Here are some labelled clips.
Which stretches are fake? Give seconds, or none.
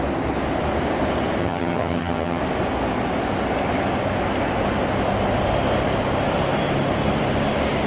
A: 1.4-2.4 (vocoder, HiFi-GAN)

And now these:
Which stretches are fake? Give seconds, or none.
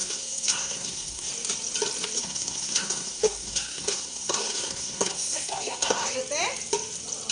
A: 0.0-1.3 (codec, SNAC); 2.2-6.2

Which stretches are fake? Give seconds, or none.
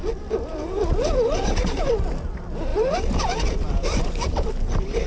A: 0.5-1.9 (vocoder, BigVGAN v2); 2.7-5.1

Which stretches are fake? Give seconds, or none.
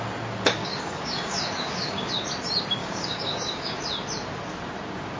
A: 0.6-2.1 (codec, DAC); 2.8-3.8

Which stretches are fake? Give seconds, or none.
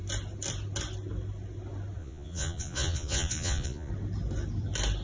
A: 2.0-3.9 (vocoder, Vocos)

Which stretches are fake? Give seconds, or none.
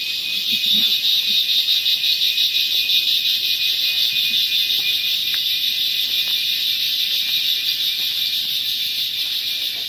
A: 0.0-4.0 (vocoder, BigVGAN v2); 4.7-9.9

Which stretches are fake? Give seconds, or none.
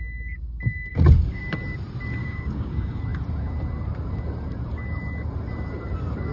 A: 0.9-1.4 (codec, DAC); 2.2-3.0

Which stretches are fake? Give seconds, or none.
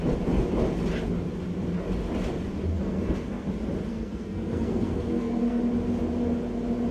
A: 2.7-3.5 (codec, SNAC); 3.9-5.6